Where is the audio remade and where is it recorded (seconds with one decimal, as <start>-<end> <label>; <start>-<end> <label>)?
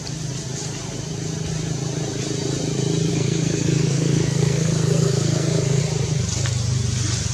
0.0-3.1 recorded; 3.1-5.8 remade; 5.8-7.3 recorded